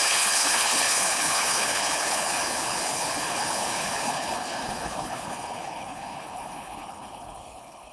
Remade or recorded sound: remade